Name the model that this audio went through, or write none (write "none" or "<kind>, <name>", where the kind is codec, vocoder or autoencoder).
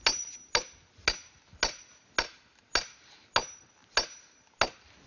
none